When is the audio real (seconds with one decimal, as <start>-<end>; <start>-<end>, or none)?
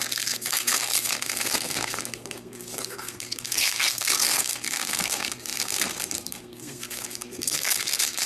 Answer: none